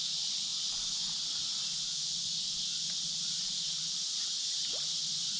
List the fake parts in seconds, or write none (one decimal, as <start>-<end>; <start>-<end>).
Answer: none